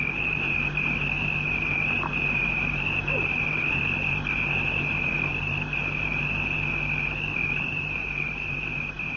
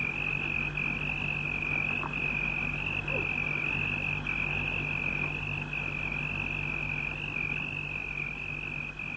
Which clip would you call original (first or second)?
second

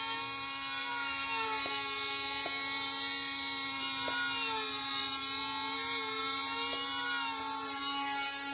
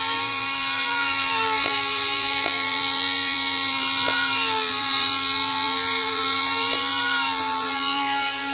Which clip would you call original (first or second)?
first